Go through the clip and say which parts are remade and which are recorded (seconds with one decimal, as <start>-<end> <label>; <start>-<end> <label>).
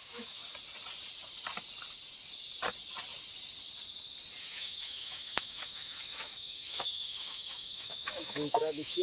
0.0-0.4 remade; 0.4-4.4 recorded; 4.4-9.0 remade